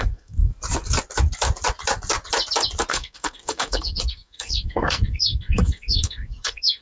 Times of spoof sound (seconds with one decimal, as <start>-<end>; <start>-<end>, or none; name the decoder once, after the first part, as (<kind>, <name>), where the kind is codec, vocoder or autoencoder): 0.0-0.5 (codec, SNAC); 2.9-6.8